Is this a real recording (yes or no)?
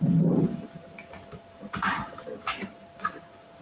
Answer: no